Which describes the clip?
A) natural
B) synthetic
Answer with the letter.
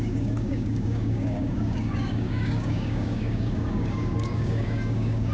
B